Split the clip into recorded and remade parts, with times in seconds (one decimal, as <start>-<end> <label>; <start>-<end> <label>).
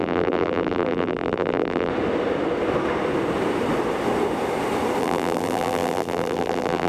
0.0-1.9 remade; 1.9-5.0 recorded; 5.0-6.9 remade